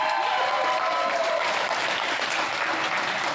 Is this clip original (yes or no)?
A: yes